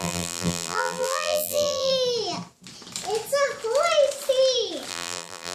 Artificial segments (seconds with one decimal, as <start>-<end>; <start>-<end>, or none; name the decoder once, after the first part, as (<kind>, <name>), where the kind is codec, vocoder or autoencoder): 0.0-1.9 (vocoder, BigVGAN v2); 4.9-5.5

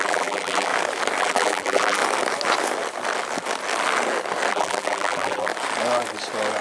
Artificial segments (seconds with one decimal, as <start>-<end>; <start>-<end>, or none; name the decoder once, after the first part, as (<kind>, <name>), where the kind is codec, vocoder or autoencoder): 0.0-0.7 (vocoder, BigVGAN v2); 1.2-2.0; 4.5-5.5